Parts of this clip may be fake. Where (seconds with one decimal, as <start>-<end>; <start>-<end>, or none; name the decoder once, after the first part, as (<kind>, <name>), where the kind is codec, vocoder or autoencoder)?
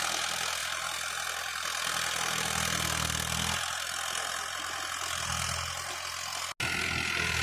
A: none